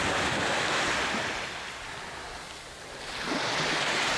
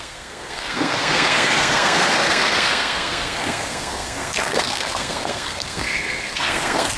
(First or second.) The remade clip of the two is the second